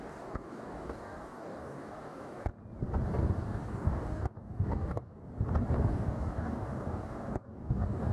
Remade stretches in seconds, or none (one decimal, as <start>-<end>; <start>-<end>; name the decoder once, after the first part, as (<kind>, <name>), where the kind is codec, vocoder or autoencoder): 0.0-2.5 (codec, DAC); 3.4-5.2; 5.9-8.1